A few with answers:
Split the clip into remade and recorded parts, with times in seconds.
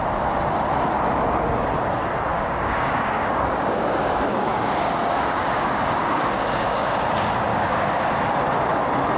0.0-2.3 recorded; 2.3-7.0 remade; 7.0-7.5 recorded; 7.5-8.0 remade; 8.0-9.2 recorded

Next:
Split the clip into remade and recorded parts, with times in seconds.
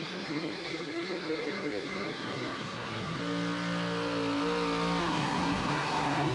0.0-3.2 remade; 3.2-5.0 recorded; 5.0-6.3 remade